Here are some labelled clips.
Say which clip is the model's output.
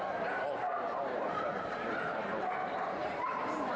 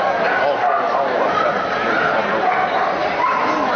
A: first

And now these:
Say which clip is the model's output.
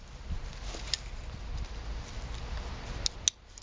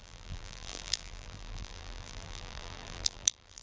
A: second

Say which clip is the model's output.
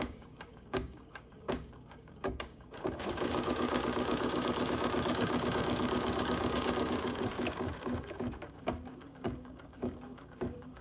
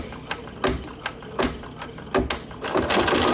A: first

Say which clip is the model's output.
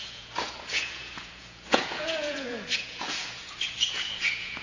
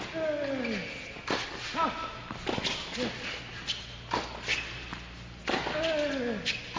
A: first